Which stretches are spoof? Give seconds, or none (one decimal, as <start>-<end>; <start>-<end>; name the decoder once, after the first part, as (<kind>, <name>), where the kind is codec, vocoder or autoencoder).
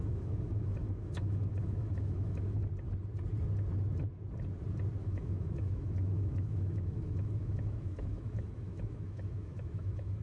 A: 0.0-2.6 (autoencoder, DAC-VAE); 5.0-10.2